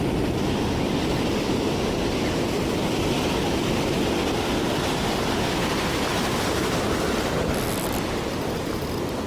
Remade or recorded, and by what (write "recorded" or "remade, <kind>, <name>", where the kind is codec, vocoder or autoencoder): recorded